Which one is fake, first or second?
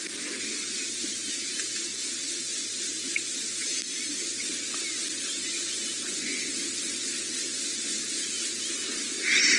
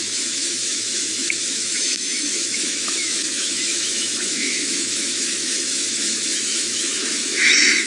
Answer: second